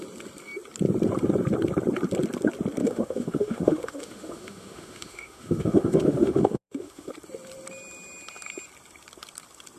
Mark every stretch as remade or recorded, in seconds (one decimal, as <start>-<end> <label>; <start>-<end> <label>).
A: 0.0-2.8 recorded; 2.8-7.1 remade; 7.1-9.8 recorded